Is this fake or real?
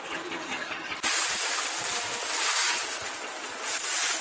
real